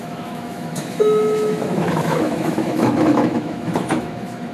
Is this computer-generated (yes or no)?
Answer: yes